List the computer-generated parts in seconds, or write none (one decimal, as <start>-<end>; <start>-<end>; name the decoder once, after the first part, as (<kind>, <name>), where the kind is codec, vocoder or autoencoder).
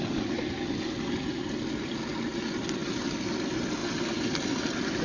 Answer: none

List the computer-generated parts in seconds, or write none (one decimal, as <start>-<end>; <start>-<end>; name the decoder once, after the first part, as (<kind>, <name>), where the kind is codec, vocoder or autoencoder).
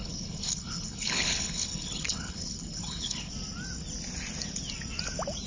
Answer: 0.0-3.3 (codec, HILCodec)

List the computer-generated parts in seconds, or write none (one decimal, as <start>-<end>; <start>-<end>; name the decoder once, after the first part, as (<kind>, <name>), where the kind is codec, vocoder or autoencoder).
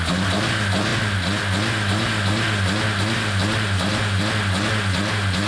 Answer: none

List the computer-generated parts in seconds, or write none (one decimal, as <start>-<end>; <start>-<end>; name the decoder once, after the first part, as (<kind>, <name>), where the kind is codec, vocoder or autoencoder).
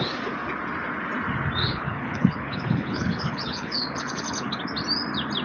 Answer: 1.6-4.6 (codec, HILCodec)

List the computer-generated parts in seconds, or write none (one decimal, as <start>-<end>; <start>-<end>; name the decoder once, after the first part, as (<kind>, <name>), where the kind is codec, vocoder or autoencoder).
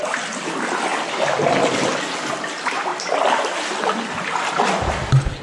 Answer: none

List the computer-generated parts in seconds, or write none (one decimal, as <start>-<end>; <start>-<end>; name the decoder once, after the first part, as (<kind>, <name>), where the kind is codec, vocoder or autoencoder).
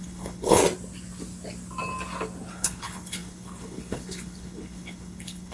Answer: 0.0-0.6 (codec, HILCodec); 2.5-5.5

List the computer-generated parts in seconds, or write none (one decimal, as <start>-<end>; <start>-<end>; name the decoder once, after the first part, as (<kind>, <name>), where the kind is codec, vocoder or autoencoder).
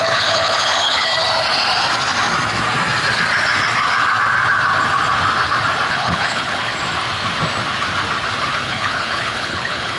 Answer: 0.0-1.1 (codec, HILCodec); 5.9-6.7; 8.5-10.0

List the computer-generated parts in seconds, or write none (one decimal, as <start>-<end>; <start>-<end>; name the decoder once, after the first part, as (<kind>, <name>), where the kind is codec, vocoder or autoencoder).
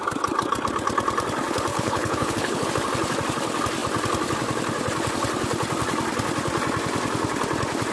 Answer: 1.7-2.7 (codec, HILCodec)